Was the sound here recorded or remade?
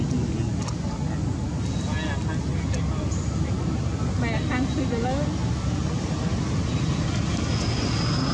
recorded